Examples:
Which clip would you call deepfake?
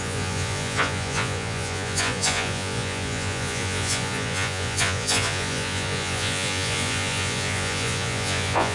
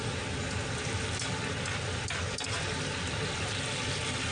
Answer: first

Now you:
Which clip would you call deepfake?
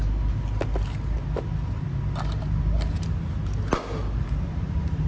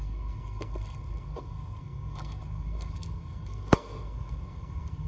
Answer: second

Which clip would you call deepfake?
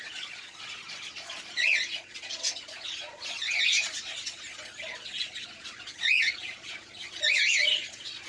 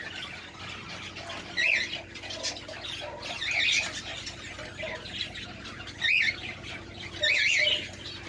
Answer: first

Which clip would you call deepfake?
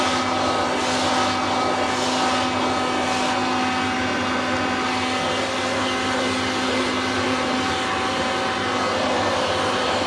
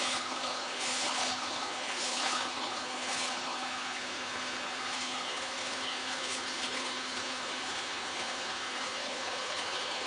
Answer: second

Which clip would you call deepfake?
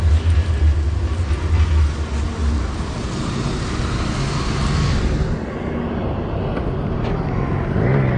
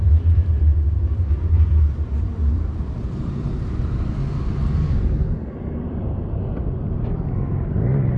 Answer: second